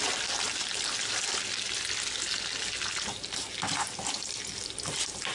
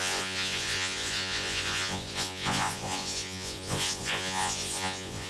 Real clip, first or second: first